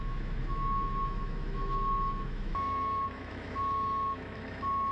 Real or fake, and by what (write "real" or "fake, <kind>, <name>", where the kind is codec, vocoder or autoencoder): fake, autoencoder, DAC-VAE